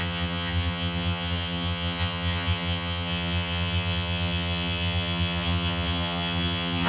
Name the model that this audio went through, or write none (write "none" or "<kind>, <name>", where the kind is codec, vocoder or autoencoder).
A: vocoder, HiFi-GAN